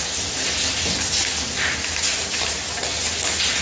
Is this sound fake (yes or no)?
no